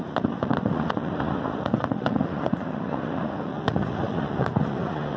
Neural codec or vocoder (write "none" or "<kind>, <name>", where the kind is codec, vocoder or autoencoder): vocoder, Vocos